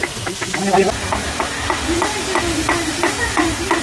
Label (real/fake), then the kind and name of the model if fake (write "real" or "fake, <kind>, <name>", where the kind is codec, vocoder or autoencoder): real